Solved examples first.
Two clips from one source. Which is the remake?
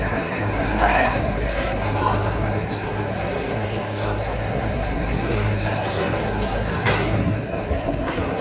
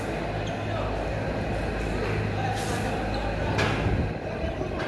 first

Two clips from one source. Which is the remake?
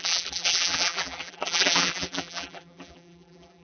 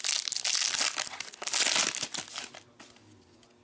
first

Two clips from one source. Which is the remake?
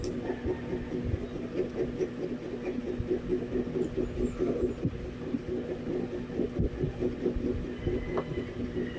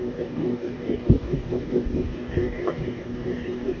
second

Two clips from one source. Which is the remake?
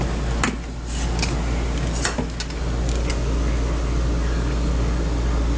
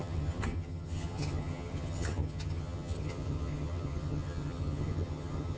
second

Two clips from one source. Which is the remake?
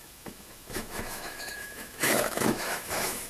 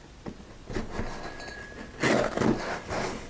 first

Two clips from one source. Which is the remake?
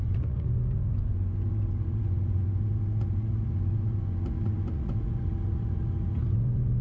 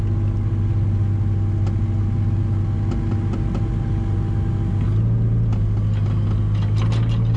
first